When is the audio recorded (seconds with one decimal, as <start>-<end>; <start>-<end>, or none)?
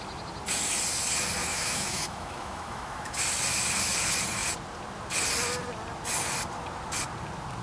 0.0-1.4; 3.2-7.6